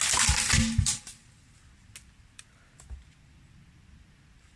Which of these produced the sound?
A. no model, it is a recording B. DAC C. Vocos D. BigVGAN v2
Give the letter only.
A